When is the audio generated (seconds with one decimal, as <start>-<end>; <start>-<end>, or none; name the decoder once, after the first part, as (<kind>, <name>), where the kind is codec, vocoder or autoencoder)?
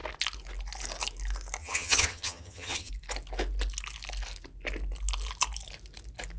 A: 1.6-2.9 (vocoder, HiFi-GAN)